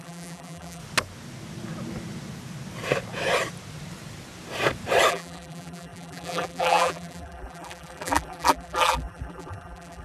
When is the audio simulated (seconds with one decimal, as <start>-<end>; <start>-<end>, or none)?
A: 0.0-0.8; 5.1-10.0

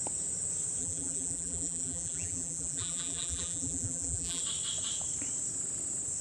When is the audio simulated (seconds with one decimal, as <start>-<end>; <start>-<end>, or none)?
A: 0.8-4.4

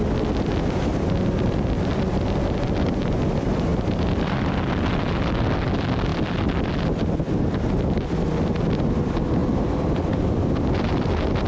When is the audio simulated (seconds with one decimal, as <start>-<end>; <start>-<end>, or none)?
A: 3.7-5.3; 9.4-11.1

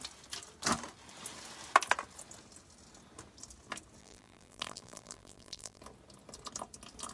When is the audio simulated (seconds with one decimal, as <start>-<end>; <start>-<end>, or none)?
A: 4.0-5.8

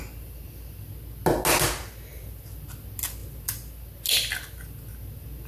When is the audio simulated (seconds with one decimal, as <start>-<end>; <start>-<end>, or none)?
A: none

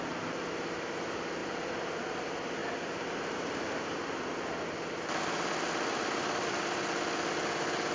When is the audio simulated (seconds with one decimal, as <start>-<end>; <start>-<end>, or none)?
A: 2.6-4.1

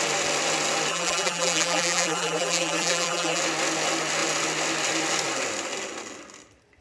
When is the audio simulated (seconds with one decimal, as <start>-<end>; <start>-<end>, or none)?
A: 0.9-3.4